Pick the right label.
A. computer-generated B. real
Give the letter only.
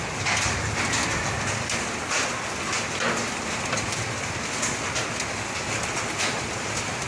B